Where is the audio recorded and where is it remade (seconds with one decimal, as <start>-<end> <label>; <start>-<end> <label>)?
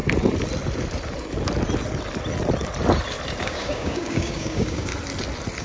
0.0-3.4 recorded; 3.4-4.9 remade; 4.9-5.6 recorded